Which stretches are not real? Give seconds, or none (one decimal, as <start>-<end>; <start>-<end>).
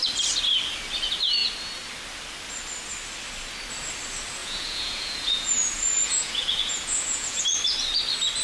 4.4-7.4